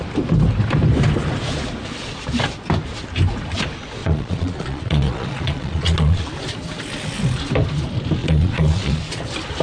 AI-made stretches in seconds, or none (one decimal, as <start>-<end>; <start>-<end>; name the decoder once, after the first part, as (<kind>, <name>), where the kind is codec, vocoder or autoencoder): 4.0-6.3 (vocoder, Vocos); 8.2-9.0